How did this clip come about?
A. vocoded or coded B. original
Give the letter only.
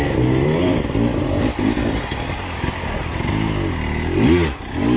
B